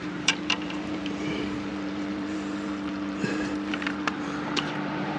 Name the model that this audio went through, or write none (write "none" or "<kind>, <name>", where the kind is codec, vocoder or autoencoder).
vocoder, BigVGAN v2